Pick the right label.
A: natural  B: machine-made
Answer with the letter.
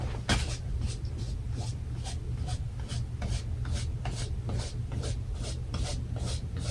A